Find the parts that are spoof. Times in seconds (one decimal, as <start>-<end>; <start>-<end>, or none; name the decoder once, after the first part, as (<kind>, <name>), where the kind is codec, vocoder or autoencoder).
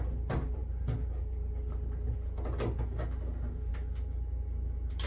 none